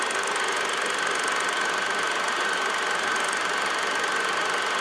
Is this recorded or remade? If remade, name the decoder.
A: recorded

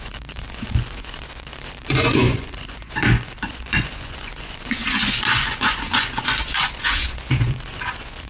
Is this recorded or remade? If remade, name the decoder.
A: remade, vocoder, Vocos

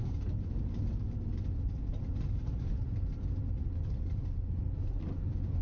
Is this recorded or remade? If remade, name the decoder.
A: remade, vocoder, BigVGAN v2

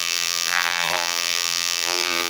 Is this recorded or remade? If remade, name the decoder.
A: remade, vocoder, BigVGAN v2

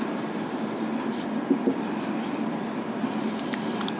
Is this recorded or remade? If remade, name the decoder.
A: remade, vocoder, BigVGAN v2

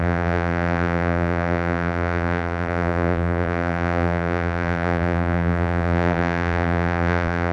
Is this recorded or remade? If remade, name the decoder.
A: remade, vocoder, BigVGAN v2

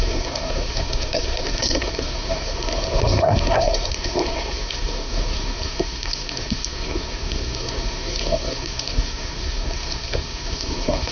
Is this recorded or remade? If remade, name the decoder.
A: remade, codec, SNAC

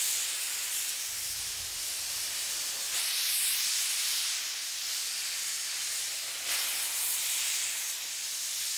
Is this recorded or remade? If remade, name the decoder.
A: recorded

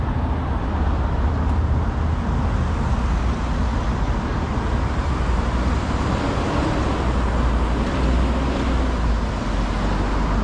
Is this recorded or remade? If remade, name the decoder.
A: recorded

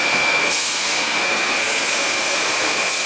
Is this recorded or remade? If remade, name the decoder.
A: remade, codec, SNAC